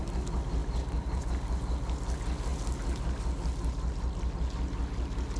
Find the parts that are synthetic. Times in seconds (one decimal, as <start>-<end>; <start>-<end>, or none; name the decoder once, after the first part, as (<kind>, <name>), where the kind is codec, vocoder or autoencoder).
0.6-1.3 (vocoder, BigVGAN v2)